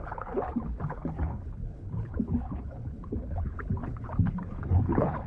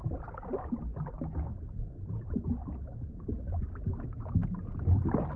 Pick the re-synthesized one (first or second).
first